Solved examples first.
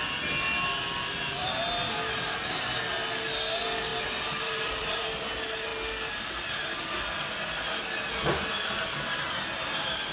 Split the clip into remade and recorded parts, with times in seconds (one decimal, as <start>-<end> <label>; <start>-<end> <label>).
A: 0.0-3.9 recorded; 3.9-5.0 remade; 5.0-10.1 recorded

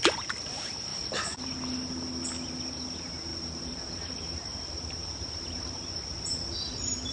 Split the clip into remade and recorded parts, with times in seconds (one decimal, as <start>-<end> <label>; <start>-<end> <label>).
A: 0.0-0.9 recorded; 0.9-1.5 remade; 1.5-3.3 recorded; 3.3-5.7 remade; 5.7-7.1 recorded

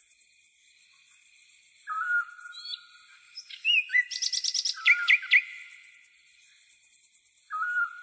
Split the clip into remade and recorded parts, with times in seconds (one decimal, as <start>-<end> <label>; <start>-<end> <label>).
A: 0.0-2.7 remade; 2.7-3.7 recorded; 3.7-8.0 remade

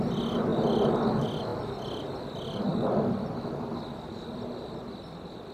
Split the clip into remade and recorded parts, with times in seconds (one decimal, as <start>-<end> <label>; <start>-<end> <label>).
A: 0.0-5.5 recorded